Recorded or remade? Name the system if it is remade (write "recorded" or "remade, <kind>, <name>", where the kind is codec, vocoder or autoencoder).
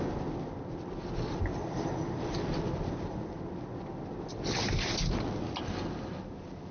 recorded